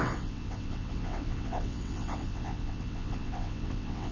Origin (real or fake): fake